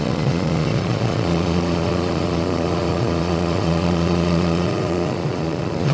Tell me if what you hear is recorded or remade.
remade